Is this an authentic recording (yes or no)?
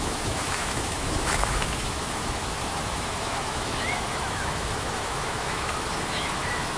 no